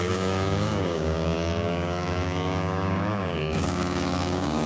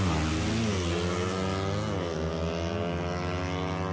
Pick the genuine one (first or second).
second